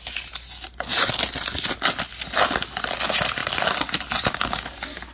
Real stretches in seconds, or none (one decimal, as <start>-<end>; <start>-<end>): 0.0-5.1